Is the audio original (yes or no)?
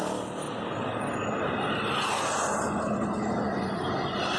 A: yes